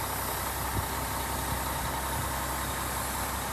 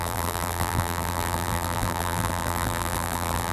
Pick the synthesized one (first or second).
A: second